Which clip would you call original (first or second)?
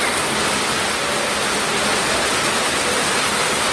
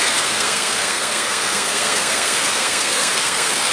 first